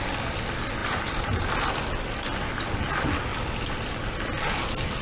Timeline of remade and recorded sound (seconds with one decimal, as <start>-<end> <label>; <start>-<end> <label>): 0.0-0.8 recorded; 0.8-1.5 remade; 1.5-5.0 recorded